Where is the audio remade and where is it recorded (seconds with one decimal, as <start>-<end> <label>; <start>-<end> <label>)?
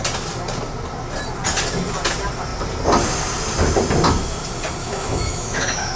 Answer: 0.0-4.8 recorded; 4.8-6.0 remade